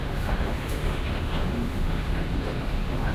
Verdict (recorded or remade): remade